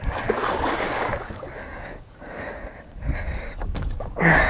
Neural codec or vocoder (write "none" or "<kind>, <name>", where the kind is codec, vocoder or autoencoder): codec, DAC